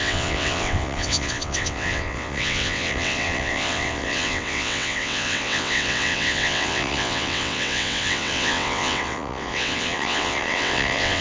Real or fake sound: fake